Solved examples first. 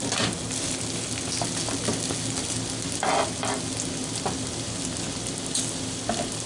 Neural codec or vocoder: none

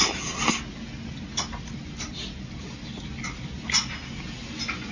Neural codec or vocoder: none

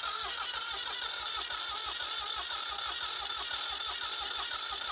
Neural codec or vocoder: none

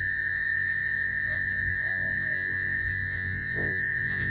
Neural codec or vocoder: vocoder, Vocos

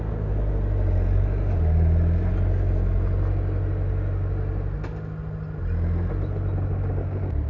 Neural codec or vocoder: none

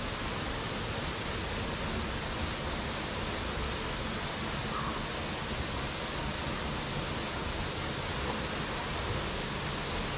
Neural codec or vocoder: none